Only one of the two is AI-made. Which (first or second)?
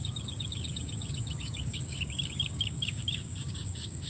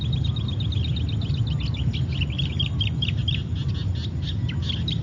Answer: first